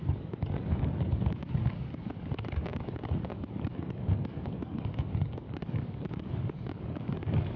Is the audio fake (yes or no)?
yes